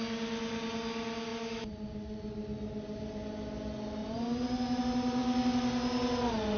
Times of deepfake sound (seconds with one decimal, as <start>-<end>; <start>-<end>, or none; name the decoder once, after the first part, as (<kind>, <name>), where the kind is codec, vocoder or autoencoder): 1.3-3.2 (vocoder, BigVGAN v2); 4.0-4.8